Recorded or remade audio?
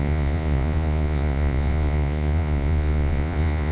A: remade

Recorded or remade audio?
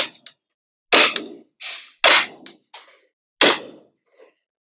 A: recorded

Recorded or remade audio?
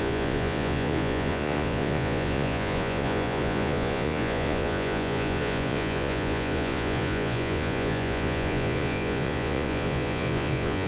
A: remade